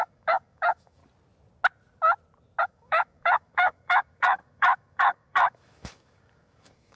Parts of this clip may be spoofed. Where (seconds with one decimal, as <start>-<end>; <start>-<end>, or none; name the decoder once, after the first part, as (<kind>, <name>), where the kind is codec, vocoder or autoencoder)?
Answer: 0.0-1.0 (codec, DAC); 2.6-7.0